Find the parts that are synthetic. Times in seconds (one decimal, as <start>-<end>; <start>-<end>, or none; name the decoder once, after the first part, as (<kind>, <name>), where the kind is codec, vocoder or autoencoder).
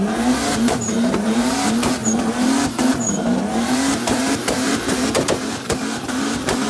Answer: 0.0-6.7 (vocoder, BigVGAN v2)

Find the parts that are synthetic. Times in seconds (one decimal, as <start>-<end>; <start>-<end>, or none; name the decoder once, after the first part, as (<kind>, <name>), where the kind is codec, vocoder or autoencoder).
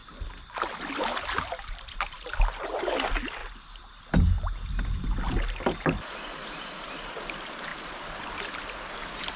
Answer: 0.0-2.9 (vocoder, BigVGAN v2); 3.4-4.1; 7.7-8.3